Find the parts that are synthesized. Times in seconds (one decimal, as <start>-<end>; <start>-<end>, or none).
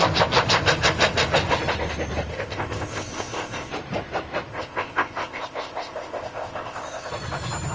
2.3-3.7; 4.5-7.1